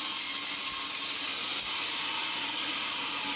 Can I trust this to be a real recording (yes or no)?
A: yes